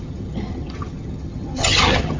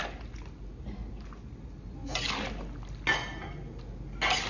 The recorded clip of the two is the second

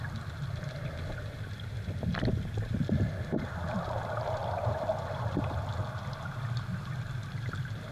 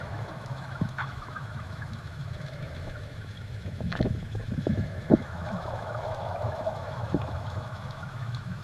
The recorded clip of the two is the first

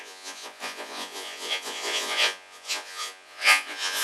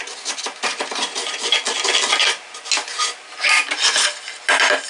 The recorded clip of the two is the second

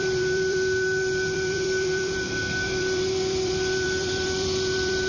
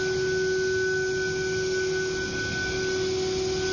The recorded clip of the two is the second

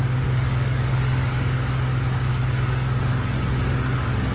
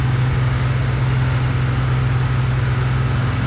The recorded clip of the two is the second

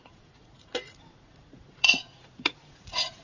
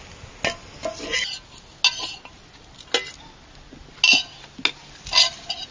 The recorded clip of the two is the second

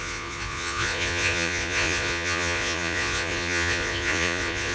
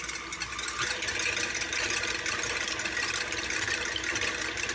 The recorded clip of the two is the second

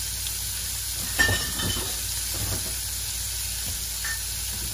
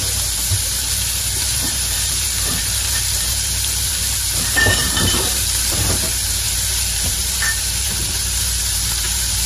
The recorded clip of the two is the first